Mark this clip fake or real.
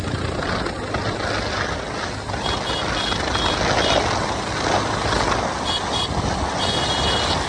real